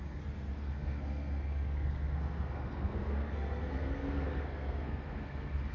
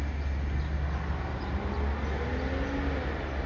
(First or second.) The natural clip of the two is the second